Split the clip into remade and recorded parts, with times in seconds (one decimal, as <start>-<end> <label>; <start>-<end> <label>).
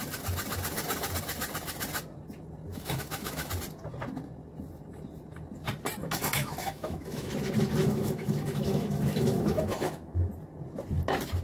0.0-2.7 recorded; 2.7-3.5 remade; 3.5-6.0 recorded; 6.0-7.3 remade; 7.3-7.8 recorded; 7.8-10.3 remade; 10.3-11.4 recorded